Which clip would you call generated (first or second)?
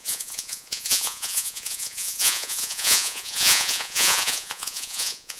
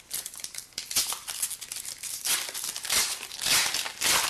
first